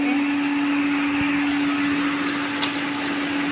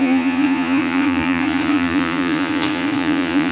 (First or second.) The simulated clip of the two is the second